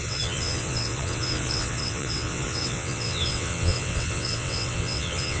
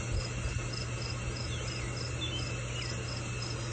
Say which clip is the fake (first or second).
first